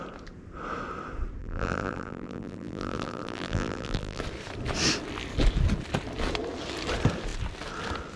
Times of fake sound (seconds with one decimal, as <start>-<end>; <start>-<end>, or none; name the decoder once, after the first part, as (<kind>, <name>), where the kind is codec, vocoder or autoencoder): 1.4-4.2 (vocoder, BigVGAN v2)